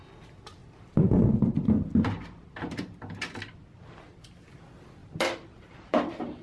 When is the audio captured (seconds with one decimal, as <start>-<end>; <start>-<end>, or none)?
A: 0.0-0.6; 4.4-5.0